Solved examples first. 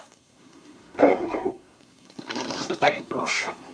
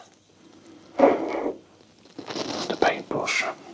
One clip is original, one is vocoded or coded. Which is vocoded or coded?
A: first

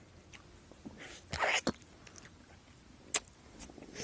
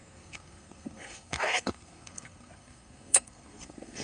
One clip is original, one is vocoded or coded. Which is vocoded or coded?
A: second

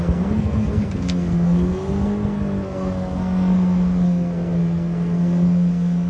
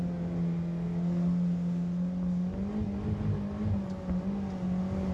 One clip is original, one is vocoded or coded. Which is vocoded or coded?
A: first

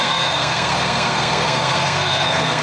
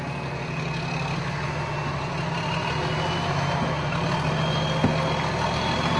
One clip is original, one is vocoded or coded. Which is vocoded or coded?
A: first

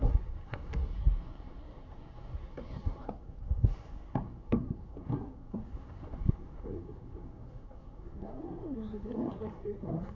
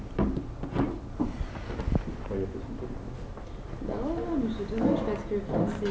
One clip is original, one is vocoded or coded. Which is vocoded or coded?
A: first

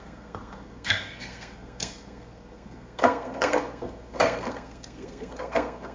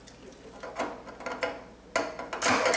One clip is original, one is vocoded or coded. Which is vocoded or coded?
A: first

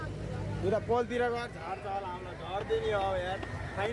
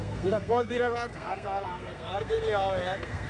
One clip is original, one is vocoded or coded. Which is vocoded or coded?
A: second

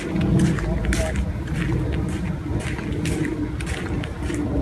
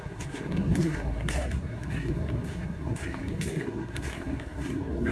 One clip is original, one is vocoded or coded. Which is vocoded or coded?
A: second